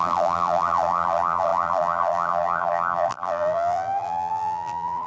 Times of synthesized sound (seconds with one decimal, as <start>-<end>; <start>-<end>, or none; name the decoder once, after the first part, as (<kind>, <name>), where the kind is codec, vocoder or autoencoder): 0.0-5.1 (vocoder, BigVGAN v2)